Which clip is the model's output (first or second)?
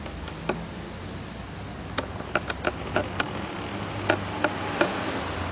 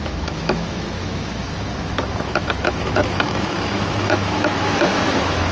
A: second